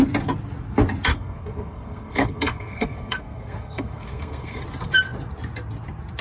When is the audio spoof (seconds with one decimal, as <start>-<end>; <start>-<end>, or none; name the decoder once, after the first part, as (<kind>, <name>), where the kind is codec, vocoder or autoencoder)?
1.1-4.6 (codec, SNAC)